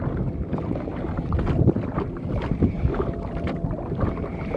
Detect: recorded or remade recorded